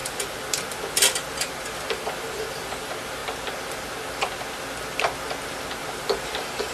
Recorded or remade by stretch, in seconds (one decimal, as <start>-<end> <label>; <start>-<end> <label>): 0.0-2.8 remade; 2.8-5.8 recorded; 5.8-6.7 remade